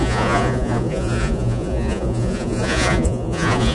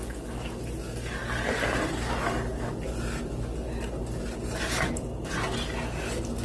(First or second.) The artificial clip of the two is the first